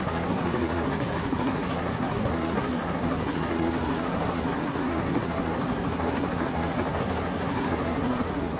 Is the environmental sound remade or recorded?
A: remade